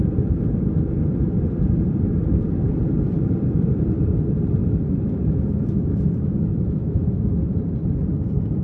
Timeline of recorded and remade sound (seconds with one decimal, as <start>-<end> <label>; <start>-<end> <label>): 0.0-4.6 recorded; 4.6-7.4 remade; 7.4-8.6 recorded